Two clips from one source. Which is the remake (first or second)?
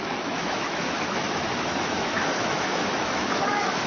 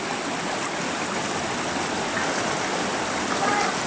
first